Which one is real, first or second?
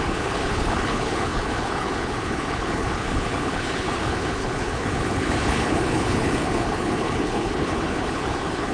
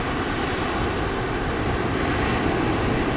second